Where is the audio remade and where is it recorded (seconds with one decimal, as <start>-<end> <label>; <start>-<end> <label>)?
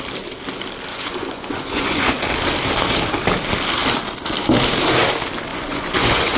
0.0-0.9 recorded; 0.9-2.2 remade; 2.2-5.5 recorded; 5.5-6.4 remade